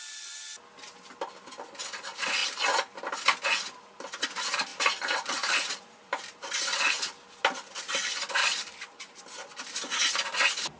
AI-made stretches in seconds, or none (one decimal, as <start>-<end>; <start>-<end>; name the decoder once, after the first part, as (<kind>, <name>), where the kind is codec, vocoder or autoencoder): 4.7-6.5 (vocoder, BigVGAN v2); 8.4-9.2